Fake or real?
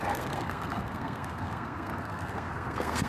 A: fake